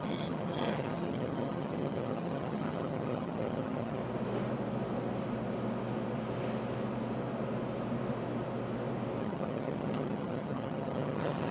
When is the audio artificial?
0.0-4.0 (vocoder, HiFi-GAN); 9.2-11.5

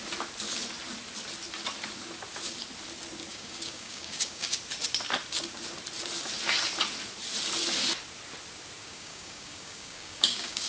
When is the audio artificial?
3.3-4.6 (codec, DAC); 8.8-10.7